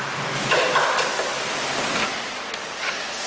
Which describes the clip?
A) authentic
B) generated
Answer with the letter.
A